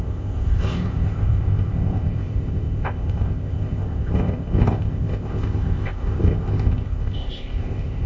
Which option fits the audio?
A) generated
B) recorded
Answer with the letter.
A